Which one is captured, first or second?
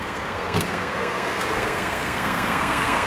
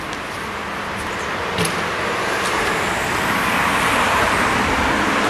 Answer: second